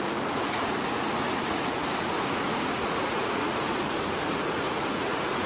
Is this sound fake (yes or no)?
yes